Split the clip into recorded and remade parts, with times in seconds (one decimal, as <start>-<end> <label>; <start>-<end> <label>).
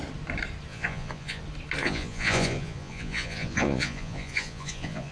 0.0-0.7 recorded; 0.7-1.4 remade; 1.4-1.8 recorded; 1.8-5.1 remade